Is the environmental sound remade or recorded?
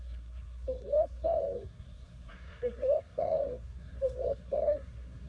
remade